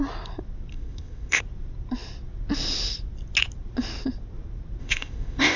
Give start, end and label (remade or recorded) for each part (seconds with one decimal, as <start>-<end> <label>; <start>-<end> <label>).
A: 0.0-0.7 recorded; 0.7-1.4 remade; 1.4-4.8 recorded; 4.8-5.6 remade